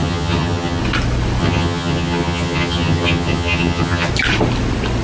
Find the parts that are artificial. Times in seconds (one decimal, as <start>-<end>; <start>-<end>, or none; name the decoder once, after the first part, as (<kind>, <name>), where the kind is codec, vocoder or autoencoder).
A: 0.0-0.8 (vocoder, HiFi-GAN); 1.4-4.1